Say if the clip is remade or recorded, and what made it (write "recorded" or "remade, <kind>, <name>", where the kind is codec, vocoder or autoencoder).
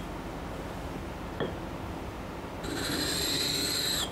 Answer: recorded